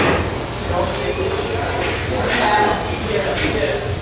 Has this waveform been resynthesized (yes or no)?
no